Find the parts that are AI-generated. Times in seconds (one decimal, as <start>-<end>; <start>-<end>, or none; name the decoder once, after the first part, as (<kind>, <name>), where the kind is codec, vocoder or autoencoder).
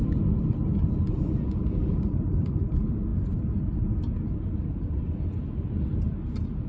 1.8-2.6 (vocoder, BigVGAN v2)